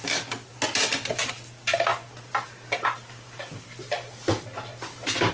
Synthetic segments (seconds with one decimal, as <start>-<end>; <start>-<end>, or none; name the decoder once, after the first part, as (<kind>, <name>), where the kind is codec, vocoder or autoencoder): none